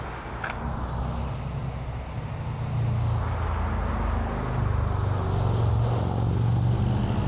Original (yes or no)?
yes